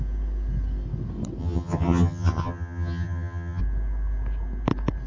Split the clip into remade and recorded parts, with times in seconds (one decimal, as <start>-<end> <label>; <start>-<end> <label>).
0.0-1.4 recorded; 1.4-3.6 remade; 3.6-5.1 recorded